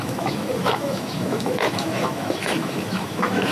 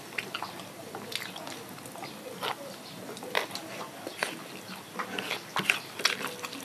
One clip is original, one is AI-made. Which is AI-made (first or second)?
first